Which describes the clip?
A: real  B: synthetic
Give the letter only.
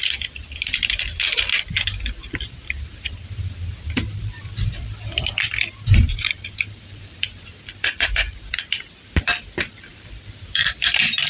B